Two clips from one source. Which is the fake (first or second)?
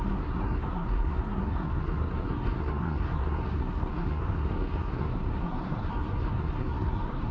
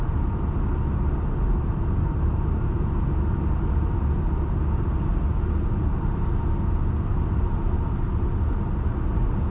first